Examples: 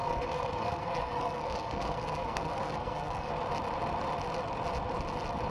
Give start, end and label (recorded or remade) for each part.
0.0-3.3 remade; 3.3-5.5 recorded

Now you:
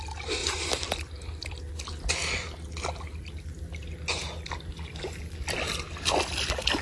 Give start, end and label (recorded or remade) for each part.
0.0-0.4 recorded; 0.4-1.6 remade; 1.6-6.8 recorded

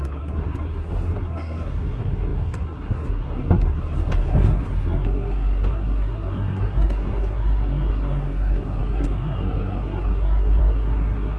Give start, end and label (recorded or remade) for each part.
0.0-11.4 remade

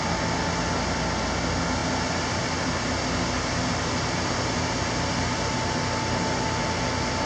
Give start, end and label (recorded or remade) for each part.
0.0-7.3 recorded